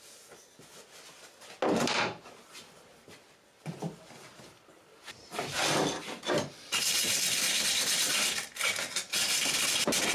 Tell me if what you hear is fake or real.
real